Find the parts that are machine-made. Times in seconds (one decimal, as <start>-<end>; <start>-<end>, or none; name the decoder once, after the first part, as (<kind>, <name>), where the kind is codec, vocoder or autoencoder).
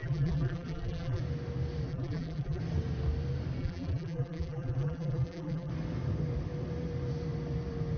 0.0-1.2 (vocoder, BigVGAN v2); 1.9-2.6; 3.6-5.7